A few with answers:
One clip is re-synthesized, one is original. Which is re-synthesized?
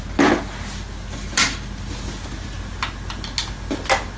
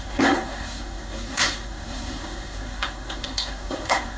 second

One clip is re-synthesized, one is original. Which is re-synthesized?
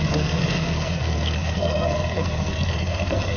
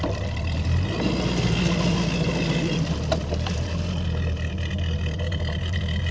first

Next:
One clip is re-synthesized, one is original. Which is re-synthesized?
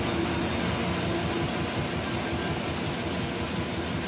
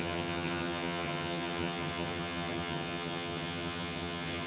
second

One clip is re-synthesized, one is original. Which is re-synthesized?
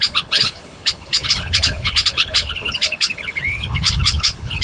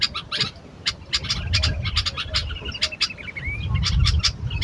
first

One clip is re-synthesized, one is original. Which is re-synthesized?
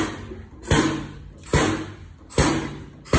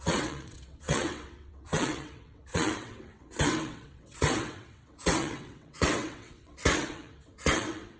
second